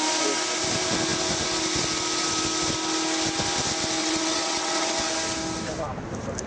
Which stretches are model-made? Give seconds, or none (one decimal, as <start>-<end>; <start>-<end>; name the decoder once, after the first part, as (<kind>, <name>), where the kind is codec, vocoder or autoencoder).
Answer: 4.0-5.1 (vocoder, WaveNeXt)

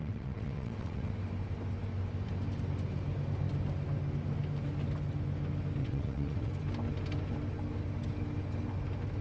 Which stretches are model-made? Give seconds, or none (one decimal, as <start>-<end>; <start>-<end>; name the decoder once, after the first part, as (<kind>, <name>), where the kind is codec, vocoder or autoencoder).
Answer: 0.0-1.1 (vocoder, WaveNeXt); 5.8-6.5

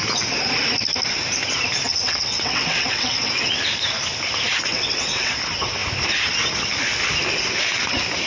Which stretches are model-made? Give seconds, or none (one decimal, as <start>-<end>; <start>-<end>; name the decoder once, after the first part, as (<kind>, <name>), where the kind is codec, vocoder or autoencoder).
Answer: 1.9-3.3 (vocoder, WaveNeXt); 4.7-5.3

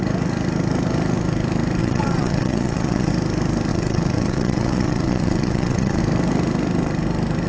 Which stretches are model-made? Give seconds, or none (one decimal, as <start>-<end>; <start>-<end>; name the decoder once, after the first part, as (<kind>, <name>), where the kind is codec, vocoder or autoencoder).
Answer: 1.8-3.1 (vocoder, WaveNeXt); 3.7-6.0

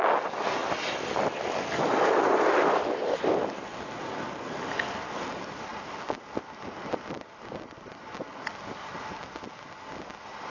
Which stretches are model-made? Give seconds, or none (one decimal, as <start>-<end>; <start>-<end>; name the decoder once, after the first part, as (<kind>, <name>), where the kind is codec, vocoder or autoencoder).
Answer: none